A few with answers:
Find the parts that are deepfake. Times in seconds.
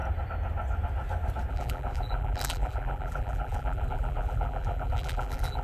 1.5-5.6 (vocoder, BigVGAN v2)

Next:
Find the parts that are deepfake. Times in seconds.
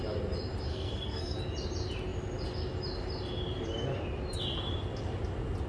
0.7-1.4 (codec, SNAC)